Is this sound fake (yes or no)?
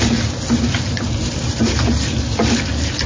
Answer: no